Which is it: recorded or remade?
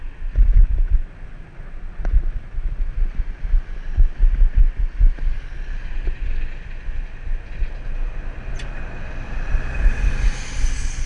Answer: recorded